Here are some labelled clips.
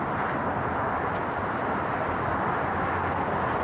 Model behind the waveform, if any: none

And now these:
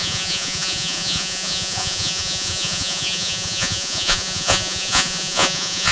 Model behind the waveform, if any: vocoder, Vocos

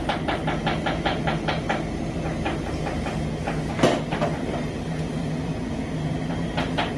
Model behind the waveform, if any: none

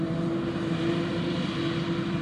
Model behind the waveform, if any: none